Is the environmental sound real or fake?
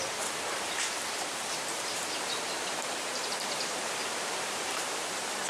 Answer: fake